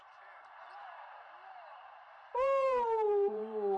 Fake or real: fake